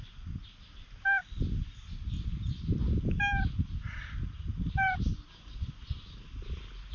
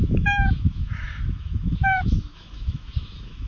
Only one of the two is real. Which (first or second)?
first